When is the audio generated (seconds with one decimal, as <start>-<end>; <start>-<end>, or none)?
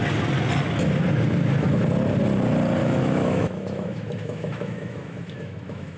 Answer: 2.8-6.0